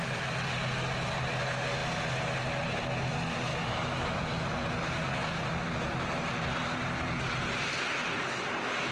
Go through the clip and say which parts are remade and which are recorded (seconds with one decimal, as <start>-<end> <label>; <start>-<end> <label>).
0.0-3.5 recorded; 3.5-4.2 remade; 4.2-8.9 recorded